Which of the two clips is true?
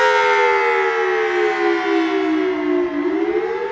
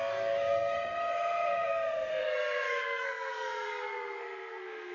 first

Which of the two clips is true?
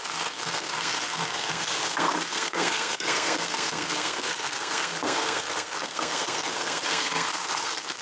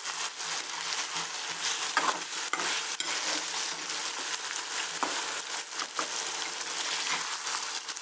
second